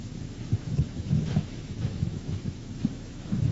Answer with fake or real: fake